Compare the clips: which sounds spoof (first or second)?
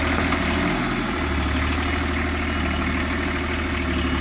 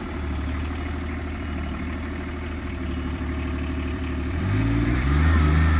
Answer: second